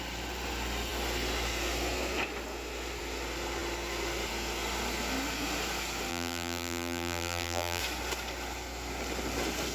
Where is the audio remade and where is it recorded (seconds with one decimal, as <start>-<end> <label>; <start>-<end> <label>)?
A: 0.0-6.1 recorded; 6.1-7.8 remade; 7.8-9.7 recorded